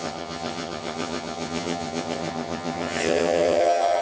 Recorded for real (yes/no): no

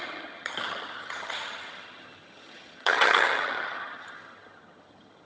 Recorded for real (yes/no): no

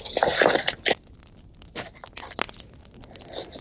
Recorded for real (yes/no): yes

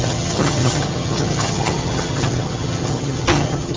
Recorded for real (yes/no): no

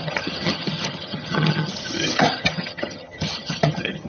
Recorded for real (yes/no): no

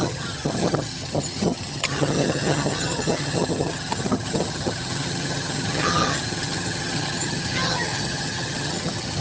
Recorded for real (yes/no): no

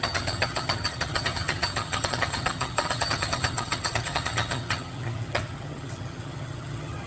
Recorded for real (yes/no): no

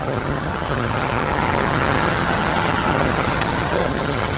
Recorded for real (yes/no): no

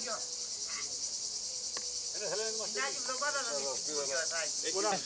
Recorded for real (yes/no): yes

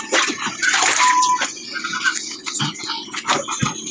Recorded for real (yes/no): yes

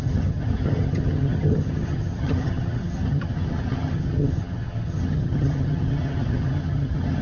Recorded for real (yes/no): no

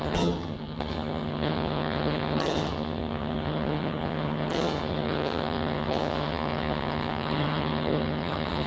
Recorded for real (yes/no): no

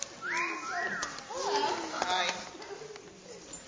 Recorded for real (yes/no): yes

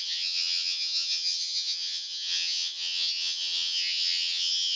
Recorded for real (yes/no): no